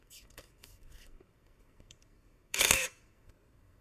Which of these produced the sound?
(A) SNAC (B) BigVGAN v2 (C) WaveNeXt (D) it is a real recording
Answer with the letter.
A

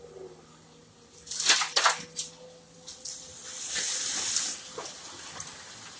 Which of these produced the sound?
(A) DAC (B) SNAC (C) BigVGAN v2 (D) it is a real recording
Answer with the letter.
D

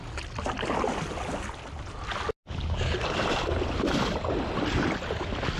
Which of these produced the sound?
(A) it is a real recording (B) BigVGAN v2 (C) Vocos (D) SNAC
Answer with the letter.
A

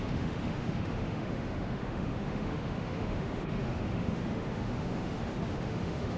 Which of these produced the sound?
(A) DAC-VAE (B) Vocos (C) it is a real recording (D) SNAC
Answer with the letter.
A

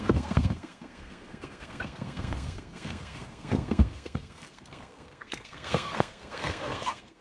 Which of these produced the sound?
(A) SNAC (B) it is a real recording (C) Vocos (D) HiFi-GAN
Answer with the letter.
A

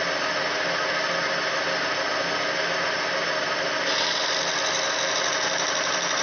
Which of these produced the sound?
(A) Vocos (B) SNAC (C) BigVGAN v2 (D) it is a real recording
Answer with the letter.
D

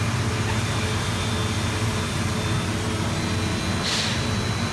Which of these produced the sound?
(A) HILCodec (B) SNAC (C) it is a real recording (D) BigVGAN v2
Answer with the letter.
C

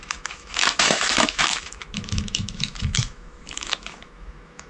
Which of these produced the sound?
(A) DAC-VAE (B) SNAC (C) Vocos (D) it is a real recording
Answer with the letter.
A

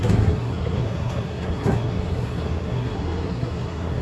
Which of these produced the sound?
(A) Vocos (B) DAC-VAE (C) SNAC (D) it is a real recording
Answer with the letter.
C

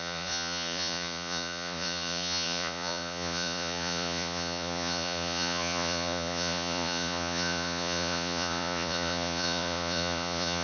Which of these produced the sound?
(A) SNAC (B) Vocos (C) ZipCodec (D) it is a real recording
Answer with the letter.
B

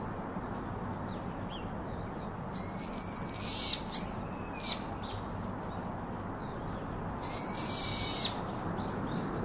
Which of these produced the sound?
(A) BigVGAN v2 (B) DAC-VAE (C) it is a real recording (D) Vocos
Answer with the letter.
C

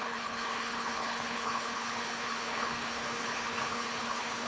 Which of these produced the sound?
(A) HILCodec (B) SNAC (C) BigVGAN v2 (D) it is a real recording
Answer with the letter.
A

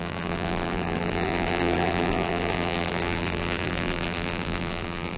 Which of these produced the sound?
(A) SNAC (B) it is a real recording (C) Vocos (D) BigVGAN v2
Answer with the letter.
D